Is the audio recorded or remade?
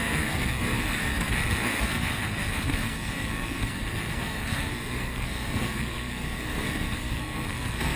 remade